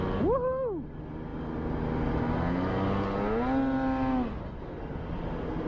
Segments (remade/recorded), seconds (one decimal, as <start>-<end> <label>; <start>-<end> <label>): 0.0-5.7 recorded

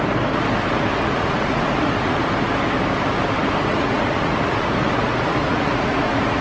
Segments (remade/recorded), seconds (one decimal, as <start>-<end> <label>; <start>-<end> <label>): 0.0-0.9 recorded; 0.9-2.2 remade; 2.2-3.7 recorded; 3.7-6.4 remade

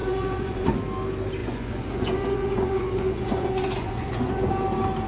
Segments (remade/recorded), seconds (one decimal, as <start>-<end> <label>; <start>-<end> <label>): 0.0-0.7 remade; 0.7-1.4 recorded; 1.4-4.5 remade; 4.5-5.1 recorded

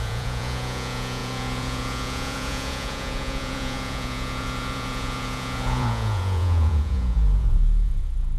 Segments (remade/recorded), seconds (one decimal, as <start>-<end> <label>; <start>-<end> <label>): 0.0-8.4 remade

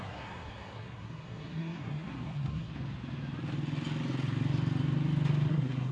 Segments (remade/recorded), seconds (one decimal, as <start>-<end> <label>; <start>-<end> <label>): 0.0-2.7 remade; 2.7-5.5 recorded; 5.5-5.9 remade

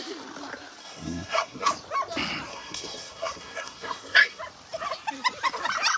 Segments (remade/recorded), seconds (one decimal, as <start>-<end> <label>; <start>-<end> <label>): 0.0-0.8 recorded; 0.8-1.7 remade; 1.7-2.5 recorded; 2.5-4.4 remade; 4.4-6.0 recorded

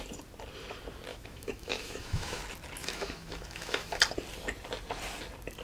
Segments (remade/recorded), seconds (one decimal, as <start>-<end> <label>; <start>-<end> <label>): 0.0-1.1 recorded; 1.1-2.4 remade; 2.4-2.8 recorded; 2.8-4.0 remade; 4.0-5.6 recorded